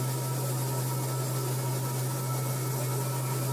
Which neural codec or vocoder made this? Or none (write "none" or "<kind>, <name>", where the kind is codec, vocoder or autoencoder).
none